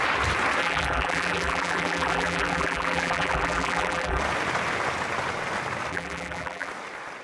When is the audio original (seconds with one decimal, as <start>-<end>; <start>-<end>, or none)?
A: 0.0-0.6; 4.2-5.9; 6.7-7.2